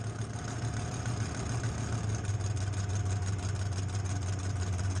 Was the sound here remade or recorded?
recorded